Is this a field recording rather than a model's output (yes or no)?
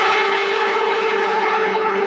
no